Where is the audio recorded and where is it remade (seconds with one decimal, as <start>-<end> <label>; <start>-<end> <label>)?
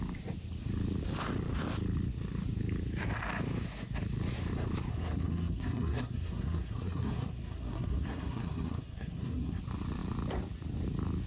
0.0-4.9 recorded; 4.9-9.6 remade; 9.6-11.3 recorded